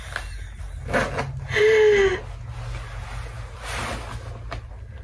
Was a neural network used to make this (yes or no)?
no